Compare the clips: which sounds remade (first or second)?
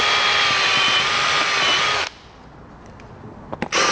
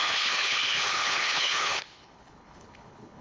second